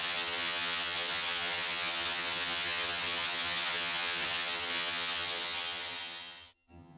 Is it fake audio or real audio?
fake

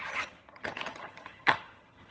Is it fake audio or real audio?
fake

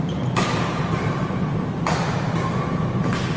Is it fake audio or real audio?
real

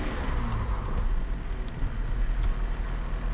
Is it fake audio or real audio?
real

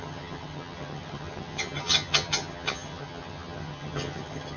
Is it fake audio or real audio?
fake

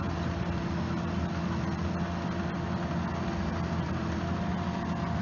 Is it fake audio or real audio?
real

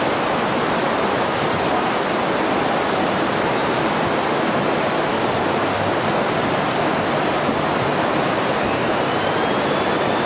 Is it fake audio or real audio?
real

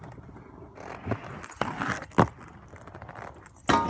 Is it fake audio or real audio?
real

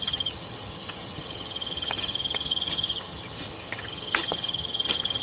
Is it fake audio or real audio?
fake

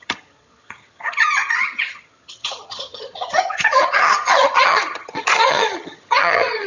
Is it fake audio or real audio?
fake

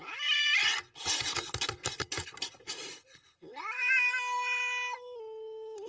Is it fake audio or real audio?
real